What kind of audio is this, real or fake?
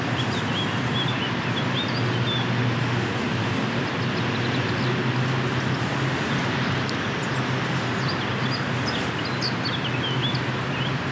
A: real